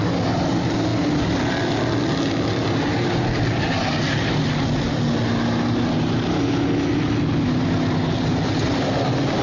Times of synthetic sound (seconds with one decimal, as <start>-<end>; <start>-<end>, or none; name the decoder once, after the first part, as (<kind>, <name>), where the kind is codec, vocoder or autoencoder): none